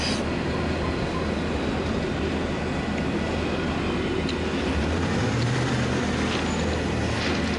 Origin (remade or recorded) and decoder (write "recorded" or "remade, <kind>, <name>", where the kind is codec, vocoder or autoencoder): recorded